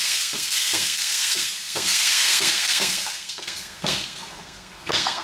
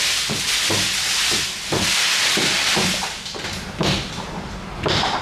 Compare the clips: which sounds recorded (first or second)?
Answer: second